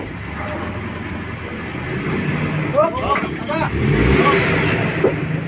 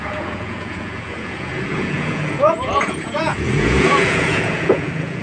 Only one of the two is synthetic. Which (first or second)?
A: second